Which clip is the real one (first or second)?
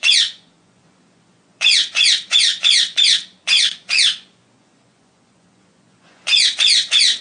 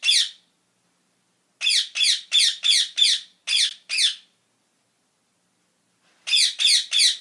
second